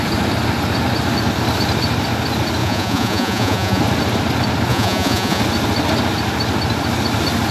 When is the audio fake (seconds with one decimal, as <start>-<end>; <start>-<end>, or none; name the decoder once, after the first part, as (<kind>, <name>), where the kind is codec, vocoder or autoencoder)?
2.6-3.8 (vocoder, Vocos); 4.7-5.4